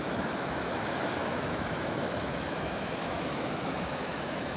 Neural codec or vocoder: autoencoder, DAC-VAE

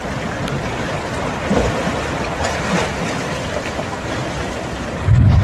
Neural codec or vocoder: none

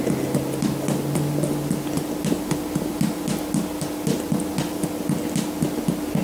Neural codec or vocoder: none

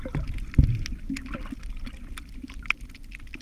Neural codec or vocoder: none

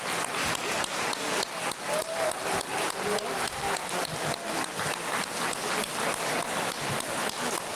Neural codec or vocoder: none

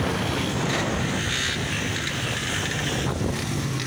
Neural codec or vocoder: none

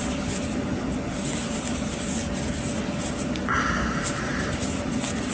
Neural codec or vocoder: none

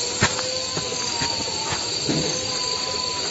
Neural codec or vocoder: none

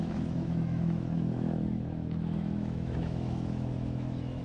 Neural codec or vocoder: autoencoder, DAC-VAE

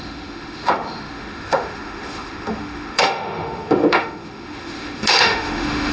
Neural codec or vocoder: autoencoder, DAC-VAE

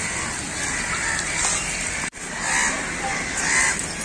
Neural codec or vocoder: none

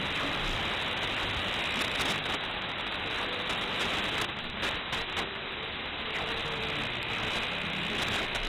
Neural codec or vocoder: none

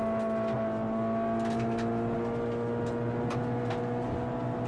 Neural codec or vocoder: none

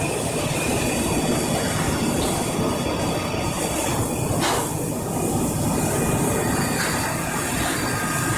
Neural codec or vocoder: none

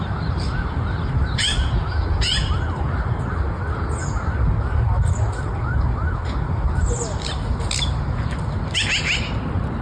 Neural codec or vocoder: none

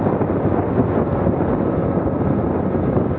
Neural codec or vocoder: none